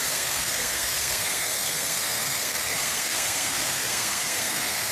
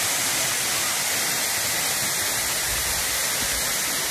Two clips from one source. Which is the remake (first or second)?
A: first